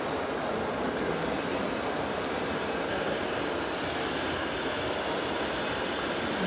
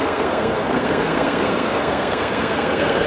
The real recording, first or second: first